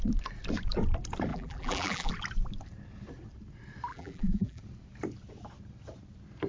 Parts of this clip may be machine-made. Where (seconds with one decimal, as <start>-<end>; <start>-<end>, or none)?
1.3-2.1; 3.9-4.6